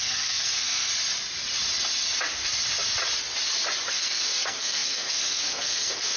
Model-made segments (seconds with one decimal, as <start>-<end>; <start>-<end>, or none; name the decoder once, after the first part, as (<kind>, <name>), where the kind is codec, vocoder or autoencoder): 0.0-0.9 (codec, SNAC); 3.9-6.2